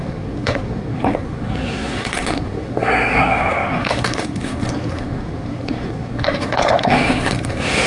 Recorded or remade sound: remade